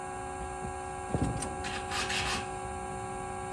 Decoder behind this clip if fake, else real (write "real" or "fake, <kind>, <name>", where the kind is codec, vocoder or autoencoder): real